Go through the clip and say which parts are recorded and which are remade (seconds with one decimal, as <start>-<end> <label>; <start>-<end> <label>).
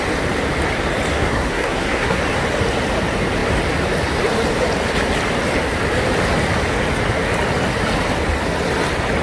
0.0-1.1 recorded; 1.1-2.2 remade; 2.2-9.2 recorded